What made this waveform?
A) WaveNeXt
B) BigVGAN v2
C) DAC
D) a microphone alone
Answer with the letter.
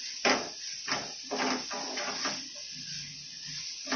D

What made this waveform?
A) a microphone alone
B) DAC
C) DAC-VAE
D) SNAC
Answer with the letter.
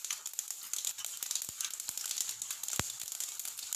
A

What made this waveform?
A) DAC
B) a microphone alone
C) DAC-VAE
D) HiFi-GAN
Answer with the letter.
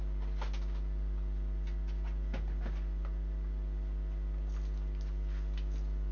B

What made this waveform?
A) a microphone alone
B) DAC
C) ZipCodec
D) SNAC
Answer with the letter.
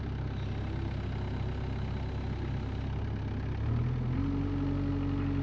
A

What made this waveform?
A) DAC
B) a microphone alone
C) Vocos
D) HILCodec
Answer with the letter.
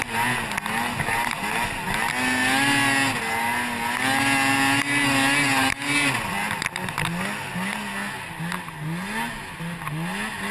B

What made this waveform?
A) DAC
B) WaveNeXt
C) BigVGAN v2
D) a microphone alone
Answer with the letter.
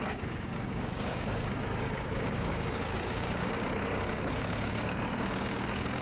A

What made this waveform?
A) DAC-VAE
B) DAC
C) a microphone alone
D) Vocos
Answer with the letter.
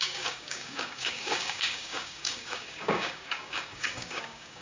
B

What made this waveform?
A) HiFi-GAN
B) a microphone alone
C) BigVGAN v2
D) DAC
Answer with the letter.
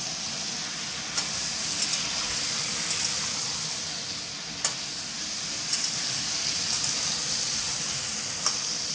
B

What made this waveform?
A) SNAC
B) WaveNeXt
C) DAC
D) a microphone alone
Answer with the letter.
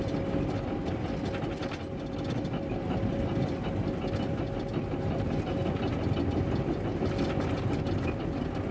D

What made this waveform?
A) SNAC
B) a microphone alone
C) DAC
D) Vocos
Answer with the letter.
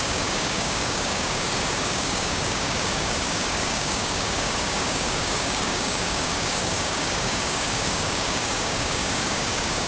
C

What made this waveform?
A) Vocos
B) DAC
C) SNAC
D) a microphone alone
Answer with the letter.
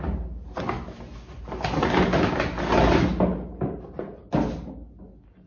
D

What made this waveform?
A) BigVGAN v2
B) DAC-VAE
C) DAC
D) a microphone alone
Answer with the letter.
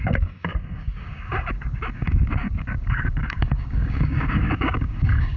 C